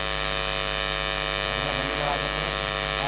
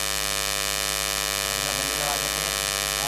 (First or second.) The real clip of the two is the second